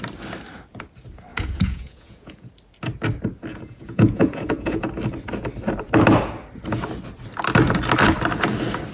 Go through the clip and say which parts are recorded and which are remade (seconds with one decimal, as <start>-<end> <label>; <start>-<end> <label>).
0.0-1.3 recorded; 1.3-2.5 remade; 2.5-3.5 recorded; 3.5-4.9 remade; 4.9-8.9 recorded